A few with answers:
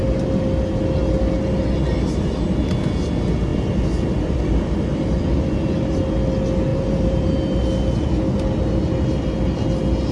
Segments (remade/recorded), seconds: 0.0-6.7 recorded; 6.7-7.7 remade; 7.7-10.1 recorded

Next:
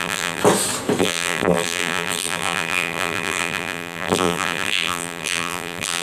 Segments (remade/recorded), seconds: 0.0-0.4 remade; 0.4-1.0 recorded; 1.0-6.0 remade